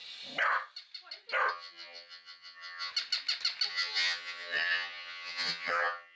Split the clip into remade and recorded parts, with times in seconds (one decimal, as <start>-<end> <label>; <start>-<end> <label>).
0.0-1.5 recorded; 1.5-2.9 remade; 2.9-3.7 recorded; 3.7-6.2 remade